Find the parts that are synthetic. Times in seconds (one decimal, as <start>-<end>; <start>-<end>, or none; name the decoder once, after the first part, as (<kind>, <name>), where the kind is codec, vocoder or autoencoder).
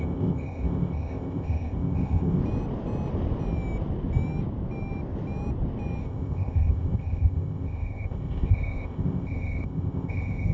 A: 0.0-2.4 (codec, ZipCodec); 6.0-10.5